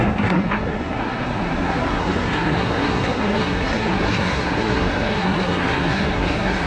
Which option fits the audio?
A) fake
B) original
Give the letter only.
A